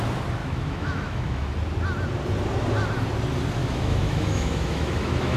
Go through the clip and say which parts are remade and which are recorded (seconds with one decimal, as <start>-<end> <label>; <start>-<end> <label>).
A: 0.0-0.4 recorded; 0.4-1.5 remade; 1.5-3.6 recorded; 3.6-5.4 remade